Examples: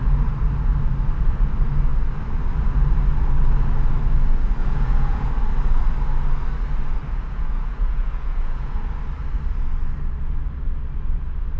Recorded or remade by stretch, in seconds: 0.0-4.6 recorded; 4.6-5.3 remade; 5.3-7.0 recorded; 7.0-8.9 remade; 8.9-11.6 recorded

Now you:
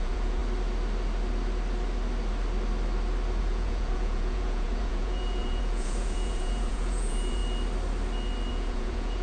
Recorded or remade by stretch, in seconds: 0.0-0.4 remade; 0.4-3.4 recorded; 3.4-7.4 remade; 7.4-8.5 recorded; 8.5-9.2 remade

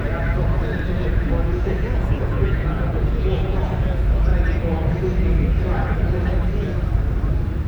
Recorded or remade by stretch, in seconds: 0.0-1.4 recorded; 1.4-3.7 remade; 3.7-7.7 recorded